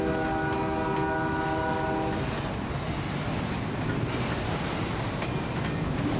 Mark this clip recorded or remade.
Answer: recorded